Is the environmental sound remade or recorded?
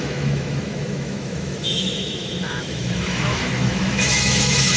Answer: remade